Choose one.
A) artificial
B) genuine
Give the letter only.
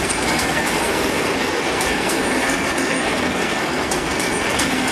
A